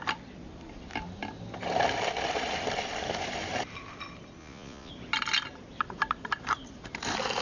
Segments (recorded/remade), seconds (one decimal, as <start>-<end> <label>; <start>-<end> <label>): 0.0-4.4 recorded; 4.4-4.9 remade; 4.9-7.4 recorded